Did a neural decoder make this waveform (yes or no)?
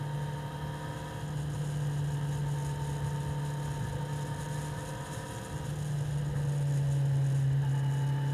no